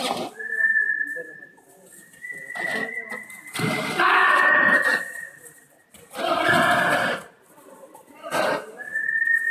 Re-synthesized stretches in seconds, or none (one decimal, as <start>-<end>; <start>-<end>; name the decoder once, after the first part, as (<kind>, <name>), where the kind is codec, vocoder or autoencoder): none